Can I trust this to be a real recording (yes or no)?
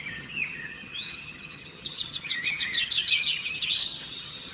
no